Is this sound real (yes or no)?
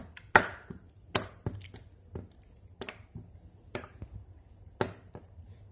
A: yes